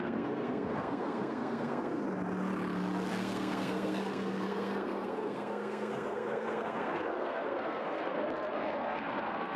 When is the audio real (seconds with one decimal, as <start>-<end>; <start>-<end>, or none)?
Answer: 2.0-3.1